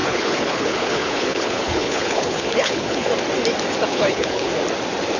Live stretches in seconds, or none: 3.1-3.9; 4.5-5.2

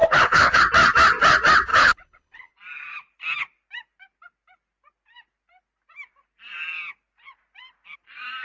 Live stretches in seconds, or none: 0.6-1.7; 2.5-8.4

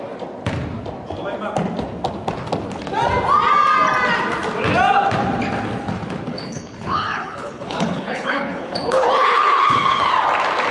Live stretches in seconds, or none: 0.0-6.3; 10.1-10.7

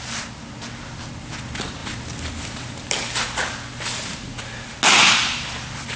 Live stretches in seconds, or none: 0.0-6.0

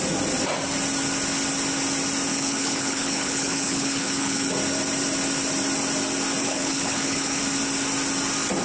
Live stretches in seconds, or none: 0.0-2.3; 4.5-6.4; 7.4-8.6

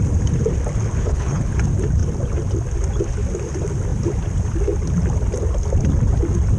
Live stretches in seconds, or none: 0.0-1.0; 1.5-6.6

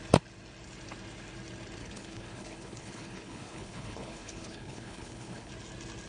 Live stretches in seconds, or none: 0.0-1.8; 5.5-6.1

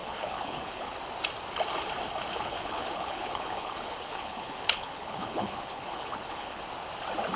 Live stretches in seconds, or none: 1.0-2.3; 6.6-7.4